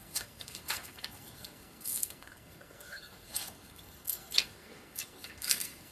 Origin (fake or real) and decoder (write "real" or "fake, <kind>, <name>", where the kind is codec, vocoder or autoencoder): fake, codec, SNAC